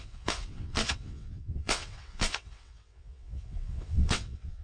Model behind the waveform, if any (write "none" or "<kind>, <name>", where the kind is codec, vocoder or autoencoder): vocoder, WaveNeXt